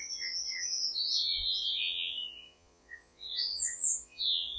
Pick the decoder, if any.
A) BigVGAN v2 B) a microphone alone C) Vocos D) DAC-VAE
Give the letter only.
C